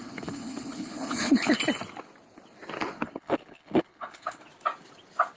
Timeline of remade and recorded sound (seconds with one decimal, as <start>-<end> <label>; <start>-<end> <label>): 0.0-1.6 remade; 1.6-2.9 recorded; 2.9-4.4 remade; 4.4-5.4 recorded